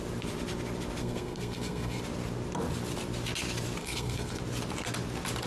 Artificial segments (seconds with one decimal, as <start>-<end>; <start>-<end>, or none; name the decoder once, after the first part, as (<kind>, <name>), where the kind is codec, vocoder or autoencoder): 1.0-2.0 (codec, SNAC); 3.8-4.4